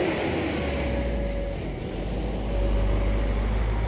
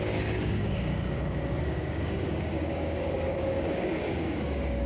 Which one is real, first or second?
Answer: first